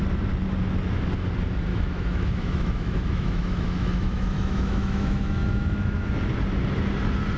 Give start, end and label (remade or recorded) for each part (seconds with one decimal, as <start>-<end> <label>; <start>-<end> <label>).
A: 0.0-1.7 recorded; 1.7-6.1 remade; 6.1-7.4 recorded